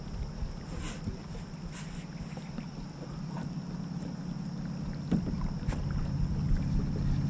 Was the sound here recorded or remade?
recorded